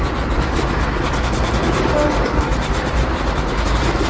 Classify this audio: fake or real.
real